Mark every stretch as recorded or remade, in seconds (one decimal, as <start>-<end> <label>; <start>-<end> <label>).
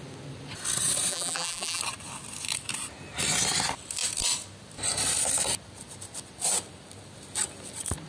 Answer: 0.0-1.1 recorded; 1.1-1.8 remade; 1.8-8.1 recorded